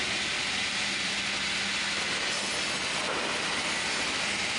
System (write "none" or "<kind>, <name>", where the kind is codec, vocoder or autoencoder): none